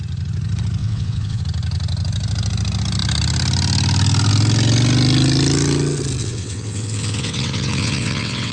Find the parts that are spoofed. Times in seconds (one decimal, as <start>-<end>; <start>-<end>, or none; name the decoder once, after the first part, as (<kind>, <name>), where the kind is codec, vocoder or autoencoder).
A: 0.8-1.4 (vocoder, WaveNeXt); 6.2-8.5